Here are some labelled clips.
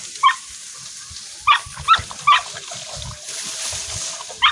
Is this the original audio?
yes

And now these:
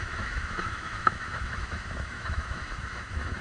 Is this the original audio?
no